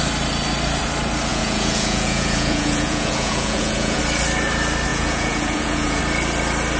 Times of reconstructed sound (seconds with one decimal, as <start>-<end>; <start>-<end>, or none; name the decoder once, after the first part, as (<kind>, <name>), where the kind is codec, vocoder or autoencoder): 1.3-4.0 (vocoder, Vocos); 4.9-6.0